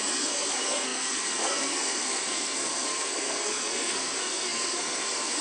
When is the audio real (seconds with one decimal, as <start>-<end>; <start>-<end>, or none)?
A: none